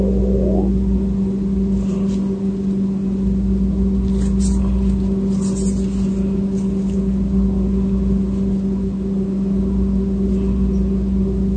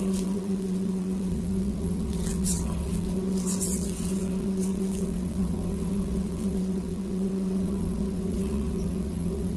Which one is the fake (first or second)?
second